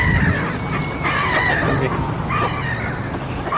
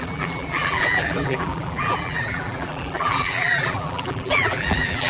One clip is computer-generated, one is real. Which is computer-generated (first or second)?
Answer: second